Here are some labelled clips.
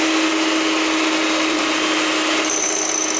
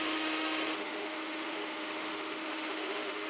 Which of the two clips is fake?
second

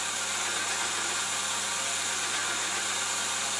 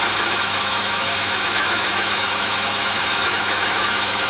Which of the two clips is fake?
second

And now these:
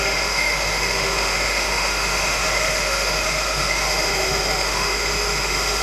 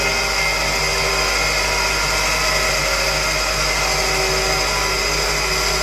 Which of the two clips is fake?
first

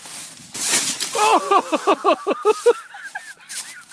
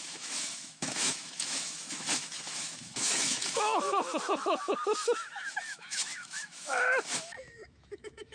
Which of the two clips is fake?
second